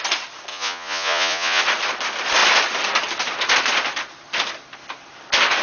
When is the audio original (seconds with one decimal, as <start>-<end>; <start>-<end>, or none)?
0.0-0.5; 1.6-5.6